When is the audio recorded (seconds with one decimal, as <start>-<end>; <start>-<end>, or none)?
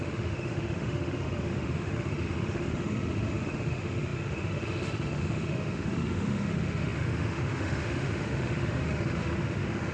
none